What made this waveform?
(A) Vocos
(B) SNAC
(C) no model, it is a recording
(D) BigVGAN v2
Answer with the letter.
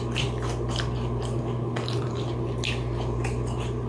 C